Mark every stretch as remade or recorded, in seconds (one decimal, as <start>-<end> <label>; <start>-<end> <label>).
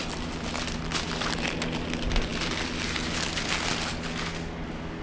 0.0-5.0 recorded